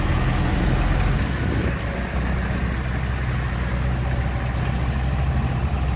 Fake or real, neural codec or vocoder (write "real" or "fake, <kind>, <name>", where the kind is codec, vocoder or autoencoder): real